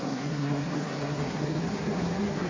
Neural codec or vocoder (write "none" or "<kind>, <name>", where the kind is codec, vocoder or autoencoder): codec, SNAC